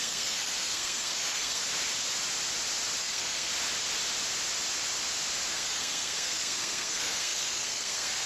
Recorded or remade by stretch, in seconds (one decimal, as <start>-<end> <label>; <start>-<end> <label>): 0.0-1.6 remade; 1.6-3.0 recorded; 3.0-3.5 remade; 3.5-5.5 recorded; 5.5-8.3 remade